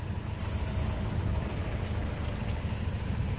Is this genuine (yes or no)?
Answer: yes